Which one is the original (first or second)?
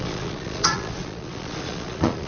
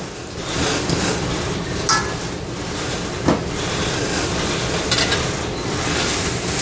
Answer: second